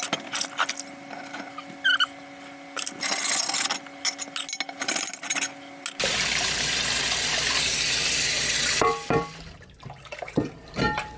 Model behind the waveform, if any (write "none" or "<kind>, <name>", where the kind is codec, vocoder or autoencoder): none